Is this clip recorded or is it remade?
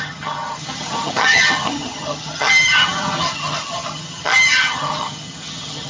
remade